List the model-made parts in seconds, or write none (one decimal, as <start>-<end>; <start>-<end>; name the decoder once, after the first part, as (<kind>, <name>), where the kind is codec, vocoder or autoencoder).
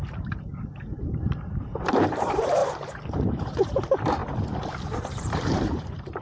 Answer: 0.8-4.2 (vocoder, BigVGAN v2); 5.0-6.2